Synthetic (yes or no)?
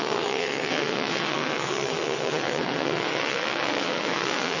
yes